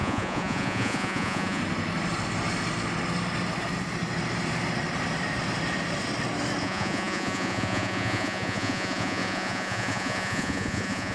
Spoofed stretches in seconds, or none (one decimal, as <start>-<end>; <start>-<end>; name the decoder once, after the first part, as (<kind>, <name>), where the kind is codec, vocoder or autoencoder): 0.0-1.6 (vocoder, Vocos); 6.6-11.1